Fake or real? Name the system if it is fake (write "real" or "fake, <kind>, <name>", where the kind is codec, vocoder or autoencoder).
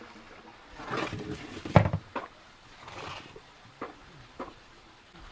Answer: real